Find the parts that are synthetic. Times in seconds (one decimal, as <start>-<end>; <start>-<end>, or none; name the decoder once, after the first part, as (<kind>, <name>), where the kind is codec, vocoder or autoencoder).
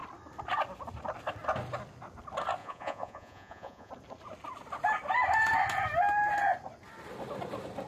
2.6-3.9 (vocoder, Vocos)